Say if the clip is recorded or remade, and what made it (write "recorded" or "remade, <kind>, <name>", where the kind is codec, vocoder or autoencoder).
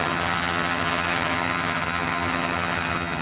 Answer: remade, vocoder, HiFi-GAN